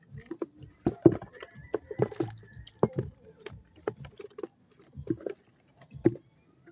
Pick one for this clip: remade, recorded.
recorded